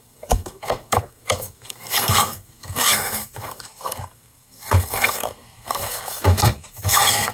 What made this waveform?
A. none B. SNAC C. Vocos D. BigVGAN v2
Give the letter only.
B